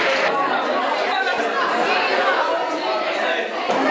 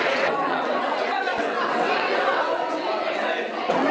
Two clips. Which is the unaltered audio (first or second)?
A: first